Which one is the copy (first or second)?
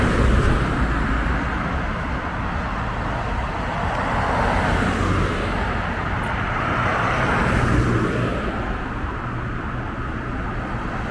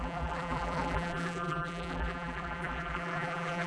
second